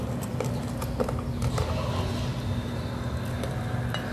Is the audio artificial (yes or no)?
no